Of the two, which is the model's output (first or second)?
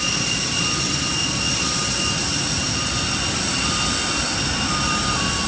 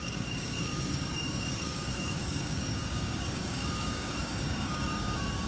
second